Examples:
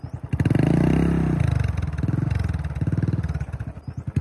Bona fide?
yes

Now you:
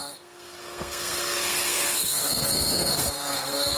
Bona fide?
no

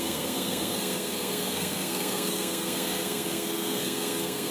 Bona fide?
no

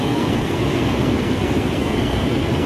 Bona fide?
no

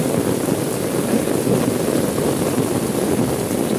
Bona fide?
yes